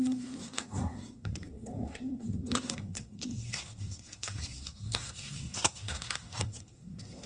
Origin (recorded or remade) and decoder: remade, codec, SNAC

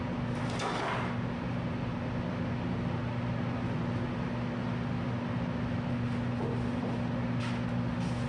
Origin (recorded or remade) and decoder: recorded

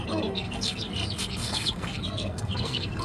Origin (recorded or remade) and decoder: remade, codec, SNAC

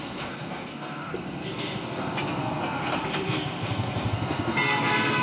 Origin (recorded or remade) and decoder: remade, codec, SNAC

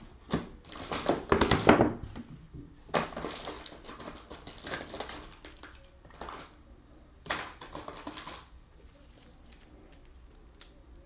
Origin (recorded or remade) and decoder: recorded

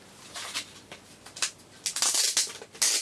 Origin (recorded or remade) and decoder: recorded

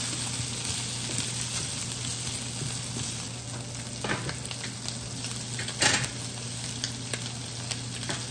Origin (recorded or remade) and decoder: recorded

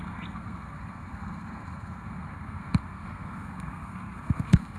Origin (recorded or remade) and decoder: remade, codec, SNAC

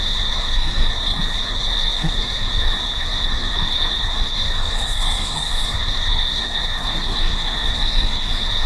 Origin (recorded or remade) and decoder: remade, codec, SNAC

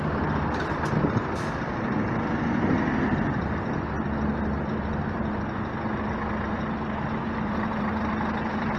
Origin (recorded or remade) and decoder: recorded